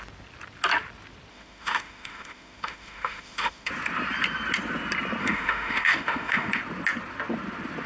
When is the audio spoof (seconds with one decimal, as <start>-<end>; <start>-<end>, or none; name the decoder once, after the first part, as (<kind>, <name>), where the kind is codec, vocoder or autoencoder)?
1.3-3.7 (autoencoder, DAC-VAE); 5.2-6.6